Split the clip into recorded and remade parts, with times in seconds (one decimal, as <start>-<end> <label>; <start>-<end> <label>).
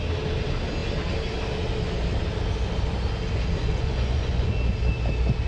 0.0-3.6 recorded; 3.6-4.5 remade; 4.5-5.5 recorded